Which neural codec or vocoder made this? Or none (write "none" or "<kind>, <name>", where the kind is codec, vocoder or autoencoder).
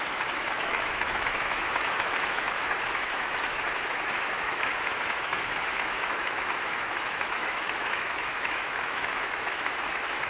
autoencoder, DAC-VAE